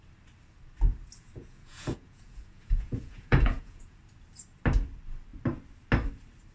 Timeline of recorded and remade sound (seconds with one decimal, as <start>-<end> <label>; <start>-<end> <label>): 0.0-1.4 recorded; 1.4-4.0 remade; 4.0-6.5 recorded